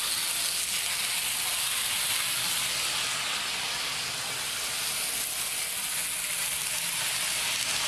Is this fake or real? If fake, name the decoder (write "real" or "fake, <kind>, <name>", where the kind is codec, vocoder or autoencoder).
real